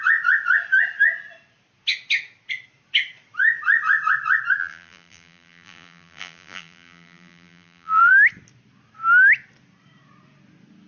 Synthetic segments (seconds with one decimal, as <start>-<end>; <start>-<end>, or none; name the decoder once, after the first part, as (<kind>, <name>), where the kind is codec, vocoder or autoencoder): 4.6-8.1 (vocoder, BigVGAN v2)